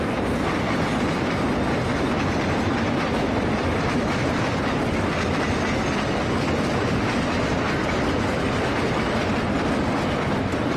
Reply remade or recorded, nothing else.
recorded